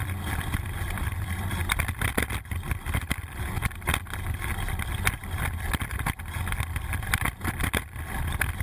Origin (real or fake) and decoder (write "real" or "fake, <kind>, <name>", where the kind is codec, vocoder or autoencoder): real